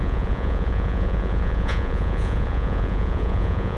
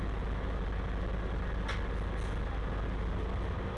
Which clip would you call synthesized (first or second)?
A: first